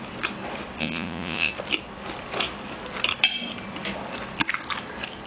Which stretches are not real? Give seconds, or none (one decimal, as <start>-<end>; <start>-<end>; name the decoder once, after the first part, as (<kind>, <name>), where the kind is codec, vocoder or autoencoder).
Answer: 0.8-1.5 (vocoder, Vocos)